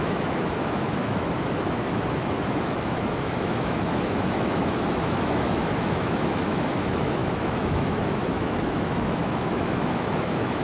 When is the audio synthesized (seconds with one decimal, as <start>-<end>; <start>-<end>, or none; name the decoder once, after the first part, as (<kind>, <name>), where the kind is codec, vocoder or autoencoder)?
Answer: 0.0-10.6 (autoencoder, DAC-VAE)